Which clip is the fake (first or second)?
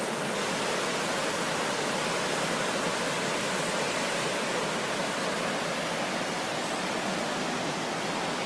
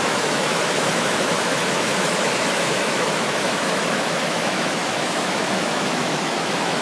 second